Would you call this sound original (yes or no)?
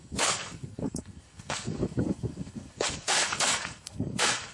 no